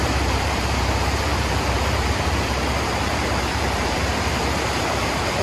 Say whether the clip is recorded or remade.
remade